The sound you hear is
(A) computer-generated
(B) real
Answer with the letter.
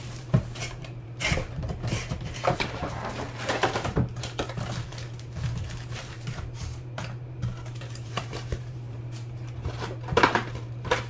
A